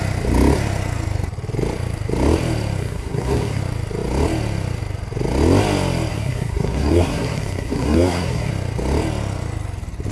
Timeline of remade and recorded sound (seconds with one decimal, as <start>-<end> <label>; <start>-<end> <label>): 0.0-2.8 recorded; 2.8-3.6 remade; 3.6-6.1 recorded; 6.1-8.5 remade; 8.5-10.1 recorded